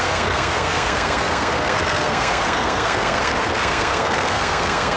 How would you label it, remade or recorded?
remade